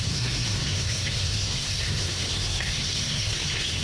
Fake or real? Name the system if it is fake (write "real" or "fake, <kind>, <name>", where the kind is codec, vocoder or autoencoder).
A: fake, codec, SNAC